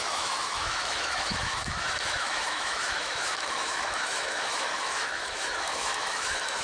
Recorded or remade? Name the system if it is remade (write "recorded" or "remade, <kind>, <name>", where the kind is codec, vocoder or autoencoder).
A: remade, autoencoder, DAC-VAE